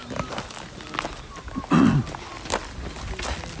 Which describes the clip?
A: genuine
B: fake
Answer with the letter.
A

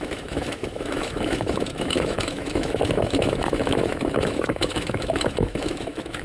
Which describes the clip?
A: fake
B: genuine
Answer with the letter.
A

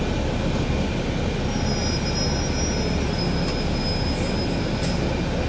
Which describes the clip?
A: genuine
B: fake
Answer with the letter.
A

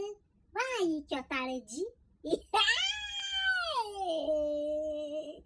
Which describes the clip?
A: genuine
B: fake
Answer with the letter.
A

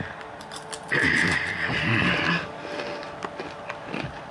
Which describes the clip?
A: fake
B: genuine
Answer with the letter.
A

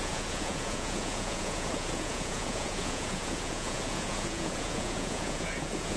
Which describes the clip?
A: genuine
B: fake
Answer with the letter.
B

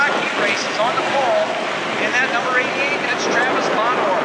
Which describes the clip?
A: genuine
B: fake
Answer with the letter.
A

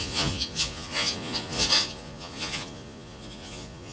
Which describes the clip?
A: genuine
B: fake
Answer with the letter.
B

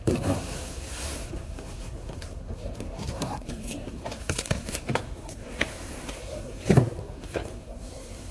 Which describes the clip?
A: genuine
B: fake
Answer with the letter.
B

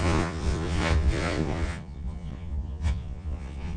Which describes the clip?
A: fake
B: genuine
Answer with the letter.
A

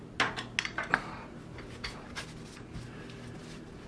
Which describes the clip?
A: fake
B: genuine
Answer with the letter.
B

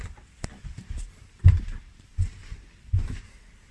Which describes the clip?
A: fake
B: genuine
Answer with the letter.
A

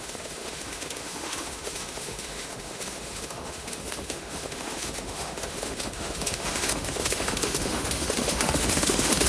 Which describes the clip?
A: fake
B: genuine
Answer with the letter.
A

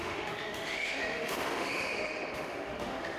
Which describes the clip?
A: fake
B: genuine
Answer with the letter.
A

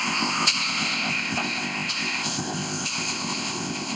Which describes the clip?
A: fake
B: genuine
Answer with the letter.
A